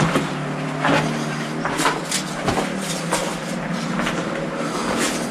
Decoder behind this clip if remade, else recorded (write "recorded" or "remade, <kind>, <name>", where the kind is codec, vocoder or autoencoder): recorded